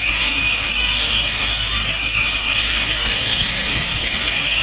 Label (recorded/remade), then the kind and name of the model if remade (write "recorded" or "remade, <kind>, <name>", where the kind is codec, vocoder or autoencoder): remade, codec, DAC